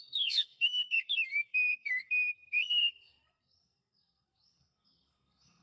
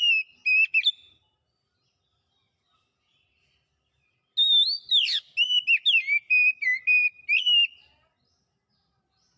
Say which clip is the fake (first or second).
first